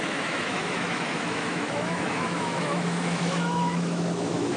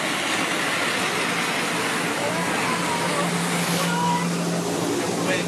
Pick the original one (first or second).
second